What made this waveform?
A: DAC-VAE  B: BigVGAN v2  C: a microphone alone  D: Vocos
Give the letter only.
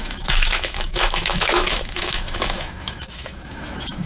A